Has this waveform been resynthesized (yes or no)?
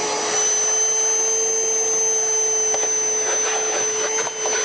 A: no